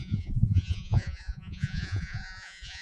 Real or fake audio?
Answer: fake